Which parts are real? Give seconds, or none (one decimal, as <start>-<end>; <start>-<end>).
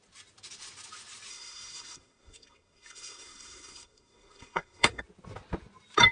0.0-1.3; 5.0-6.1